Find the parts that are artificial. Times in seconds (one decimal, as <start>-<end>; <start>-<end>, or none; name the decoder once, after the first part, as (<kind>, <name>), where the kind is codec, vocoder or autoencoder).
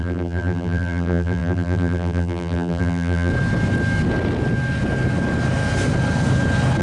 0.0-3.3 (vocoder, BigVGAN v2)